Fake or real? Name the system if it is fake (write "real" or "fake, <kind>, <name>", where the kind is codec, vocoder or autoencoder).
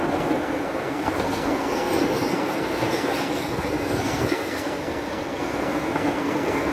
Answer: fake, codec, SNAC